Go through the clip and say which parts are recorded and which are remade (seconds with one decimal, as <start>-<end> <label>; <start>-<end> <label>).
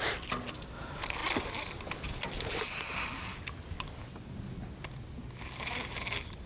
0.0-6.5 recorded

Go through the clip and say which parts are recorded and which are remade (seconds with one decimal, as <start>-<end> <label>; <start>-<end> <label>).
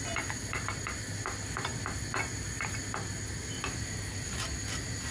0.0-5.1 recorded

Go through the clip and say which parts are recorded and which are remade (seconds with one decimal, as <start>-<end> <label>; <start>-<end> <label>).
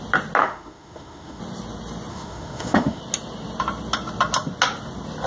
0.0-0.4 recorded; 0.4-1.4 remade; 1.4-2.1 recorded; 2.1-3.0 remade; 3.0-5.3 recorded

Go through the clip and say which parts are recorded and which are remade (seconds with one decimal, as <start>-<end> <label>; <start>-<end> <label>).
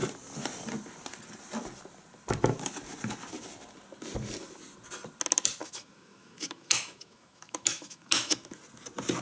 0.0-5.6 recorded; 5.6-8.6 remade; 8.6-9.2 recorded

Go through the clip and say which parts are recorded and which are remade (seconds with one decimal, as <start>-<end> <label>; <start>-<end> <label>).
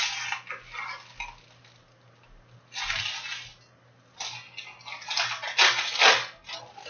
0.0-6.9 recorded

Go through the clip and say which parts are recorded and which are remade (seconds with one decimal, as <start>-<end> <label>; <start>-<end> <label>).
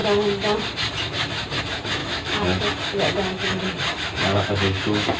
0.0-2.0 recorded; 2.0-2.6 remade; 2.6-4.3 recorded; 4.3-5.2 remade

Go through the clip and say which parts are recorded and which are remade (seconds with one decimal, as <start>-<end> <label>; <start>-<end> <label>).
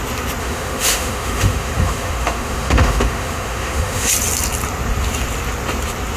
0.0-0.4 recorded; 0.4-4.1 remade; 4.1-6.2 recorded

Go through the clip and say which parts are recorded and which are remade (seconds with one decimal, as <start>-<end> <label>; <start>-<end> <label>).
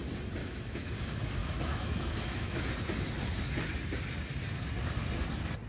0.0-0.4 recorded; 0.4-0.9 remade; 0.9-1.4 recorded; 1.4-2.7 remade; 2.7-5.7 recorded